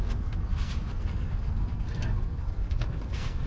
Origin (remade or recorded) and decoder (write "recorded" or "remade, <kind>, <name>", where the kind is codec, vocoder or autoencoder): remade, codec, SNAC